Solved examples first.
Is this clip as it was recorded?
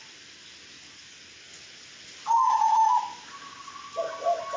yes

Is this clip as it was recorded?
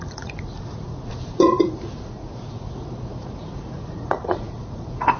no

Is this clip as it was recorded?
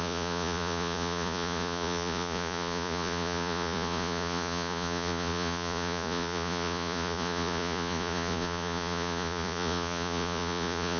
no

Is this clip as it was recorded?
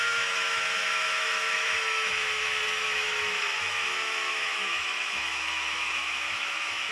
no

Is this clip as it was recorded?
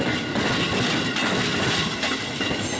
yes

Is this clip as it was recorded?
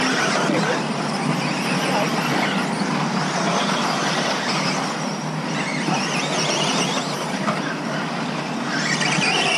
yes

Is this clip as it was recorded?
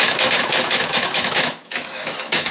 no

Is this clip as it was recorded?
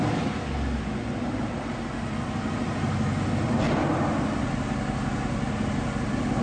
yes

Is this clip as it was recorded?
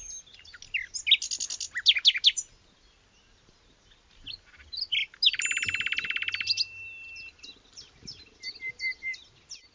yes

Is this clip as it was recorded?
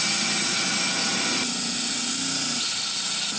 yes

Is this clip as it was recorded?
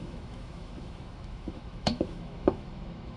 no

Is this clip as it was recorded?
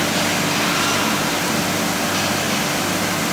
yes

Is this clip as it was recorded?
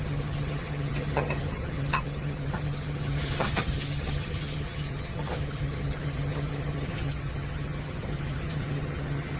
no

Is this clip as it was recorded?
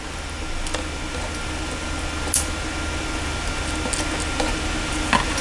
yes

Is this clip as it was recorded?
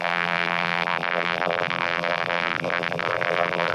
no